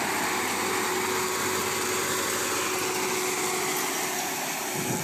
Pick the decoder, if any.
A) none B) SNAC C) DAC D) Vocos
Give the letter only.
A